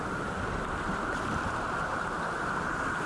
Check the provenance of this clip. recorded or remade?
recorded